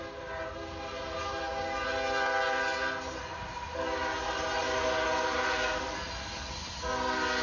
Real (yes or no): yes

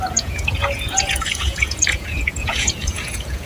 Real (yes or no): no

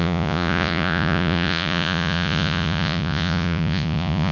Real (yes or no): no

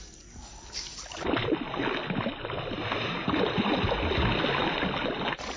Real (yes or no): yes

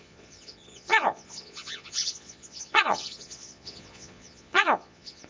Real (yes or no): no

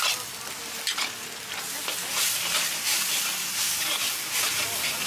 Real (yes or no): yes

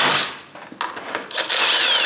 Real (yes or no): yes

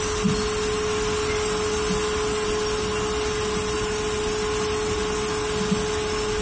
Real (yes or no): yes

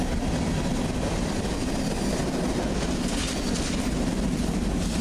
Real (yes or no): yes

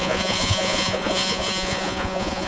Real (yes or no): no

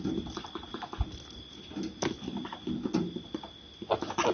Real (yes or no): yes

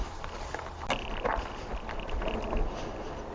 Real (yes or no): yes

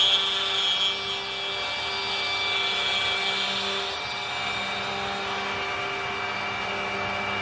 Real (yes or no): yes